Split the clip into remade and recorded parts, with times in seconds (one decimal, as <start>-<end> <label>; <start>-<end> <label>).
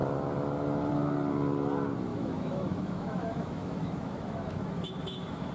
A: 0.0-2.1 recorded; 2.1-5.5 remade